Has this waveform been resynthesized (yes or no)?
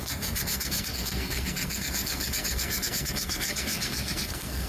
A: yes